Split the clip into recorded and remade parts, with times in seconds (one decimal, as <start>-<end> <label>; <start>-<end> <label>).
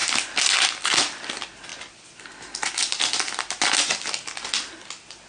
0.0-5.3 recorded